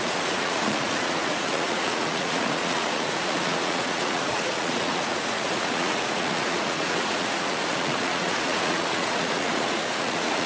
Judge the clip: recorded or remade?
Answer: remade